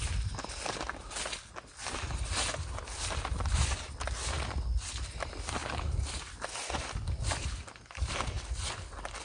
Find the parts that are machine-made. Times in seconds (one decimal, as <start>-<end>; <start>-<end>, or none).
none